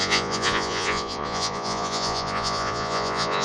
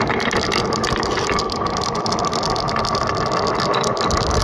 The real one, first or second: second